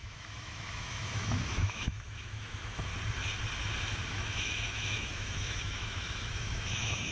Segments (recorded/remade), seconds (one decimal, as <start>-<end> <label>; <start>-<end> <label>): 0.0-2.9 remade; 2.9-4.1 recorded; 4.1-7.1 remade